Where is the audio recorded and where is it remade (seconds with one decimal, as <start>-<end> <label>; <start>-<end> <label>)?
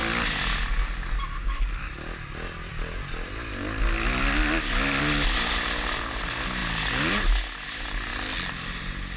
0.0-9.2 recorded